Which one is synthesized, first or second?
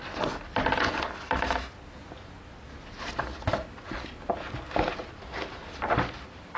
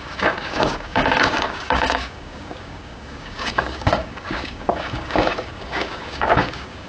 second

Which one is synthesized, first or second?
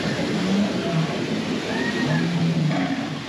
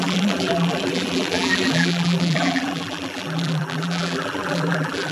second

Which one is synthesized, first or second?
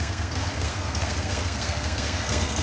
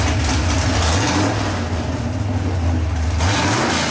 first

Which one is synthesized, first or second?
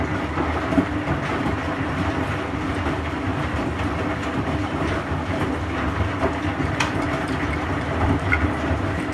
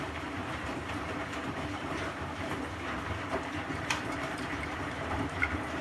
second